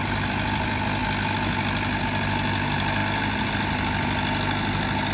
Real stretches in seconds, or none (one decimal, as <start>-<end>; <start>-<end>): 0.0-5.1